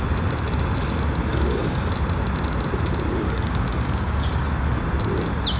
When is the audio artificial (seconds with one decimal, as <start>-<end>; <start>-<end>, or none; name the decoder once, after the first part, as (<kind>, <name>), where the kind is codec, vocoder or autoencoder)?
1.3-1.9 (codec, DAC); 3.1-4.5